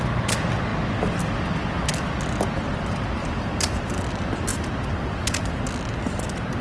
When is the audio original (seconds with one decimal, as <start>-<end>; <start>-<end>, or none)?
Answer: 0.0-3.2; 4.0-4.5; 5.2-6.6